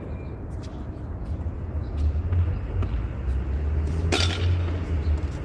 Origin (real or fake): real